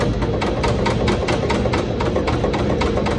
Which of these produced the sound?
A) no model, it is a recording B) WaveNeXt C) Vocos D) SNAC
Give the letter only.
A